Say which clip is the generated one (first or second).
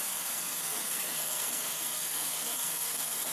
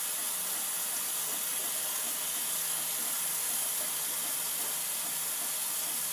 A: first